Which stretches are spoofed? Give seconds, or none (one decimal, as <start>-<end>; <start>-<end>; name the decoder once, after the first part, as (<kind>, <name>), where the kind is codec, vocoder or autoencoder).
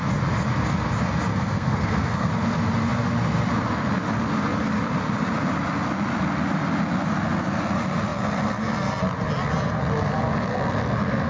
1.3-2.3 (codec, SNAC)